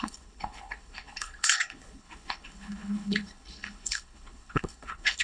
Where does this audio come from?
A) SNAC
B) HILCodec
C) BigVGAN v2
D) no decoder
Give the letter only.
B